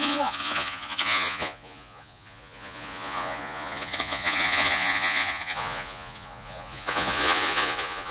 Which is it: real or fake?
fake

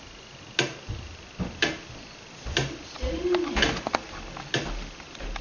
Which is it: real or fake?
real